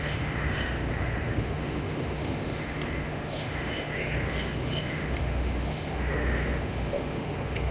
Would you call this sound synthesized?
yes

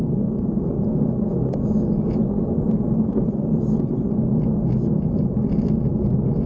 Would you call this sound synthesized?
no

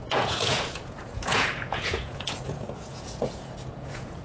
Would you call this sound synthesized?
yes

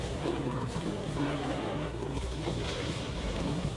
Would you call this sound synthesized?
yes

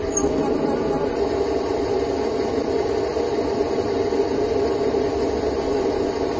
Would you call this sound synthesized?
no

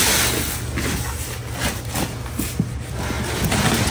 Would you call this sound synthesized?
no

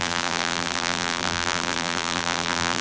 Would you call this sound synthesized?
yes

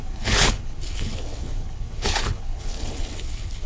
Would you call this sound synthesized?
yes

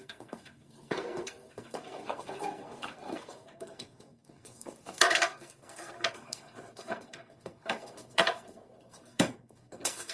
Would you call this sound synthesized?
yes